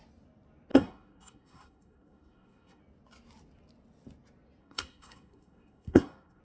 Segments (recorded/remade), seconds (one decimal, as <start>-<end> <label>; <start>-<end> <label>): 0.0-0.7 recorded; 0.7-2.8 remade; 2.8-4.6 recorded; 4.6-6.4 remade